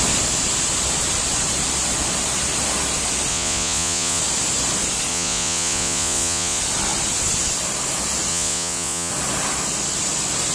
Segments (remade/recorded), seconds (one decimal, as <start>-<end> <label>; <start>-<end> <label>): 0.0-3.3 recorded; 3.3-4.2 remade; 4.2-5.1 recorded; 5.1-6.6 remade; 6.6-8.3 recorded; 8.3-9.1 remade; 9.1-10.5 recorded